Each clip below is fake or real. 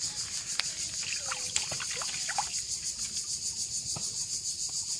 real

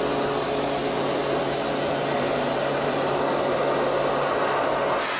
real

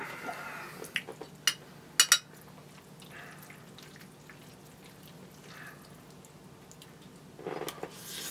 real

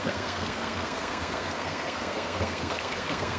fake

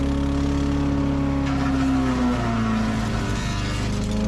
real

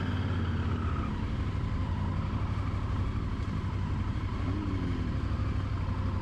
real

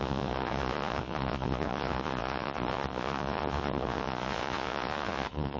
fake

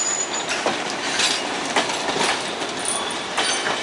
fake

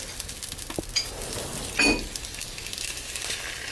real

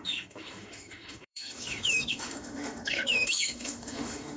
fake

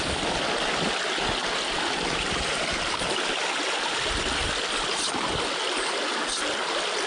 real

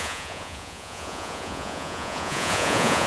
fake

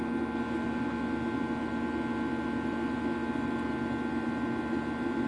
real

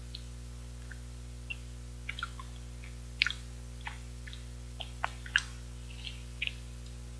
real